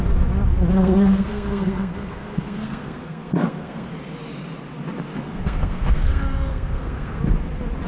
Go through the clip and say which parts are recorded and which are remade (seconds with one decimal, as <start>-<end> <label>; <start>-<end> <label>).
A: 0.0-0.8 recorded; 0.8-3.9 remade; 3.9-5.1 recorded; 5.1-7.2 remade; 7.2-7.9 recorded